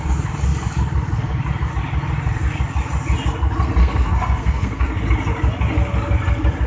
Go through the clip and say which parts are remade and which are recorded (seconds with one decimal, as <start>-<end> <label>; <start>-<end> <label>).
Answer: 0.0-3.8 recorded; 3.8-5.0 remade; 5.0-6.7 recorded